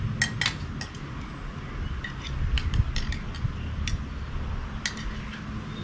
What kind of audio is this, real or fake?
real